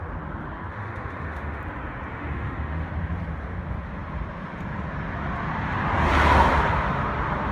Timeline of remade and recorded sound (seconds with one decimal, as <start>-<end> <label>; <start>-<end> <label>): 0.0-0.7 recorded; 0.7-1.6 remade; 1.6-2.1 recorded; 2.1-2.9 remade; 2.9-7.5 recorded